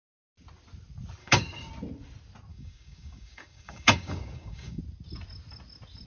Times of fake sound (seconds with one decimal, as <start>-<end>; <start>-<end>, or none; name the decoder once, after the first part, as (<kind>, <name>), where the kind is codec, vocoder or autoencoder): 1.2-1.7 (codec, DAC); 2.5-4.8